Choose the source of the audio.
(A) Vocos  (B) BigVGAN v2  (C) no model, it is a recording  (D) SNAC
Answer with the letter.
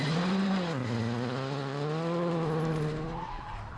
C